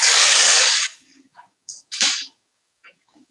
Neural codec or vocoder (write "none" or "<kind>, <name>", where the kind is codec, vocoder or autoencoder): codec, DAC